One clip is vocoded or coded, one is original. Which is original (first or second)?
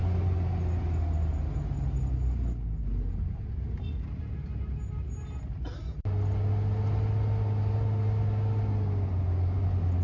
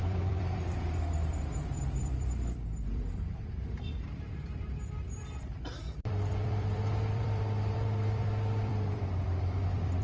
first